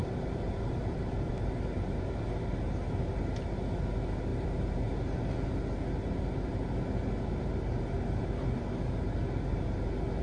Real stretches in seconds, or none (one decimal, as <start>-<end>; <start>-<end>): 1.3-10.2